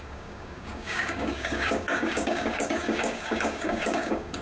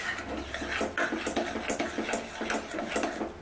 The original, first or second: second